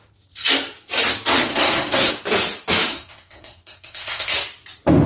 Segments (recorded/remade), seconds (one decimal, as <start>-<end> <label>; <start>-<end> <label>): 0.0-1.5 recorded; 1.5-2.1 remade; 2.1-2.9 recorded; 2.9-4.3 remade; 4.3-5.1 recorded

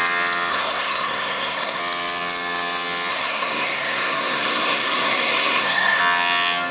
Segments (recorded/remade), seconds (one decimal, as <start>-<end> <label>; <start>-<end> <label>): 0.0-0.5 recorded; 0.5-1.8 remade; 1.8-3.1 recorded; 3.1-6.0 remade; 6.0-6.7 recorded

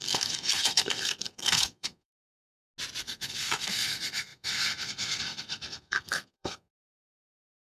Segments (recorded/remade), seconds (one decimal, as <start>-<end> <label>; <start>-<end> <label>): 0.0-2.3 remade; 2.3-3.0 recorded; 3.0-7.7 remade

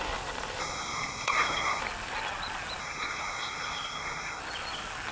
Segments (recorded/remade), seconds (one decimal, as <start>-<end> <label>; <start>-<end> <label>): 0.0-0.6 recorded; 0.6-1.8 remade; 1.8-2.8 recorded; 2.8-4.4 remade; 4.4-5.1 recorded

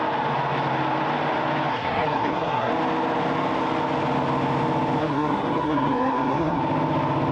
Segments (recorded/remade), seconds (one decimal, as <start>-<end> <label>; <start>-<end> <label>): 0.0-1.7 recorded; 1.7-2.7 remade; 2.7-5.0 recorded; 5.0-6.6 remade; 6.6-7.3 recorded

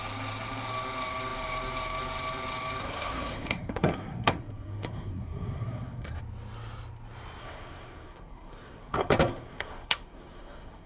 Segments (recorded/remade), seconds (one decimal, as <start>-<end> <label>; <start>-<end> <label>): 0.0-2.8 recorded; 2.8-6.2 remade; 6.2-7.4 recorded; 7.4-10.9 remade

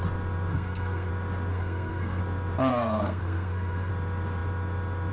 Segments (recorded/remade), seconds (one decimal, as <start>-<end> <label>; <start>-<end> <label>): 0.0-0.5 recorded; 0.5-1.1 remade; 1.1-1.5 recorded; 1.5-2.2 remade; 2.2-2.7 recorded; 2.7-3.9 remade; 3.9-5.1 recorded

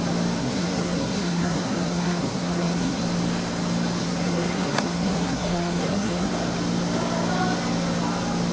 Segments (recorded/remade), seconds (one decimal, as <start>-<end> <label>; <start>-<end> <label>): 0.0-0.4 recorded; 0.4-3.0 remade; 3.0-4.0 recorded; 4.0-6.3 remade; 6.3-8.5 recorded